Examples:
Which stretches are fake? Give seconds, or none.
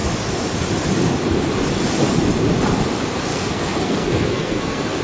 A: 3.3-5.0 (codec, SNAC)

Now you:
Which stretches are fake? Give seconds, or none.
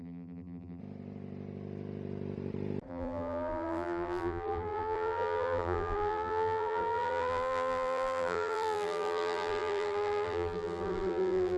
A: 0.0-0.8 (vocoder, BigVGAN v2); 2.9-11.6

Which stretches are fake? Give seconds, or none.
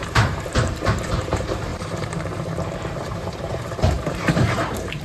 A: 0.0-5.0 (vocoder, BigVGAN v2)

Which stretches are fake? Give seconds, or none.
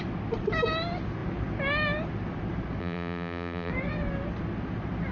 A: 2.8-3.7 (vocoder, BigVGAN v2)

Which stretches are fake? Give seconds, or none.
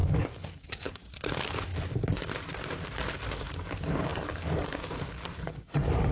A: 0.0-1.7 (codec, DAC); 3.3-6.1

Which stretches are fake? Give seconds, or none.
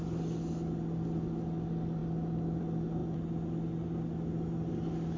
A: none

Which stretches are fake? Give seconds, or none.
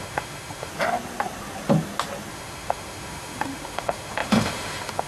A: 0.0-0.7 (autoencoder, DAC-VAE); 2.3-5.1